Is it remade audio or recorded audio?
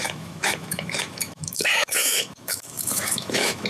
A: remade